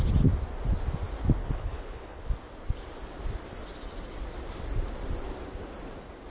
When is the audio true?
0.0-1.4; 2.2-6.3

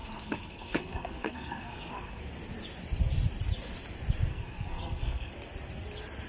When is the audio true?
2.2-4.3; 5.3-6.3

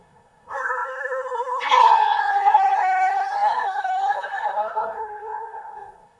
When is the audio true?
none

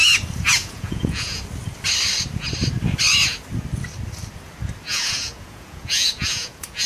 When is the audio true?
0.0-0.6; 1.4-4.9

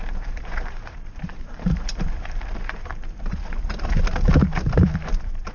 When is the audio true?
3.3-5.5